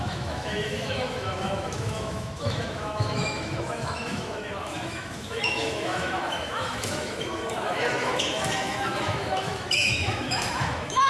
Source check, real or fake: fake